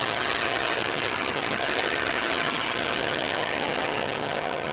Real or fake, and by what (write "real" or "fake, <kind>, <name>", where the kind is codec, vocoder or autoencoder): fake, vocoder, HiFi-GAN